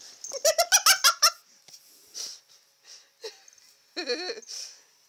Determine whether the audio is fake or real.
real